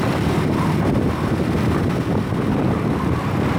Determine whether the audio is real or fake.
fake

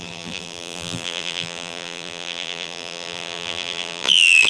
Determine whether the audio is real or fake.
fake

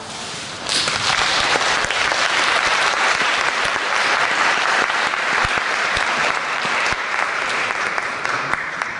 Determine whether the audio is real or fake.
fake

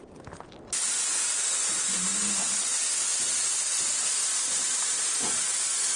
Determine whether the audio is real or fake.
real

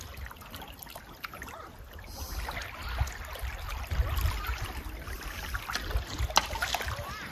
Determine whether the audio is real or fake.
real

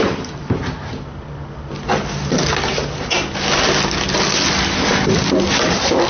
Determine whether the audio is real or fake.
real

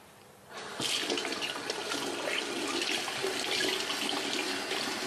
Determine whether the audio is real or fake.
real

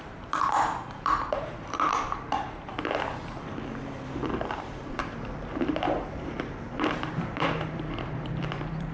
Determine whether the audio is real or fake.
fake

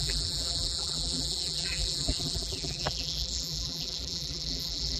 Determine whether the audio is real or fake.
fake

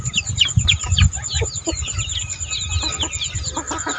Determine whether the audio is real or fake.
real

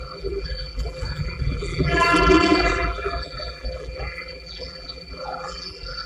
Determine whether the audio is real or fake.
fake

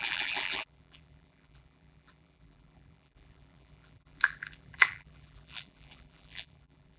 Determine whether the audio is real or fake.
fake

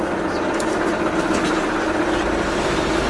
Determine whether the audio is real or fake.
real